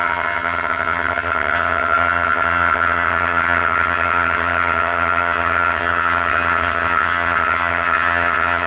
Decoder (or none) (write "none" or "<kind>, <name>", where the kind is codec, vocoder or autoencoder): vocoder, HiFi-GAN